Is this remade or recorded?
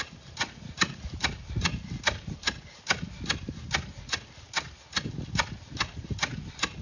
recorded